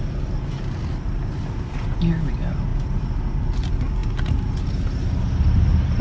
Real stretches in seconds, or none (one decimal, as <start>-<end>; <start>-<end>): 0.0-6.0